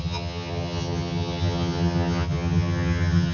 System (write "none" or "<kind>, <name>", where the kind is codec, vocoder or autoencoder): vocoder, HiFi-GAN